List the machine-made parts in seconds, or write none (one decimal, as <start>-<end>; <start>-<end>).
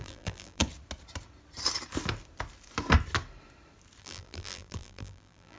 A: 0.0-0.6; 4.0-5.6